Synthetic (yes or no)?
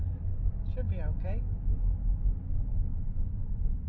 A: no